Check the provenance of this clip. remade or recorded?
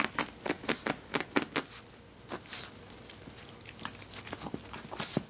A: recorded